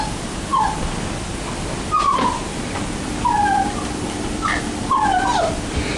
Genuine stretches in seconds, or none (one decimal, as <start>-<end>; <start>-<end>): 0.0-6.0